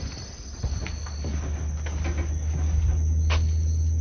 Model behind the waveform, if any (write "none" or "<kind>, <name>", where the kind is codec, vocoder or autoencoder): none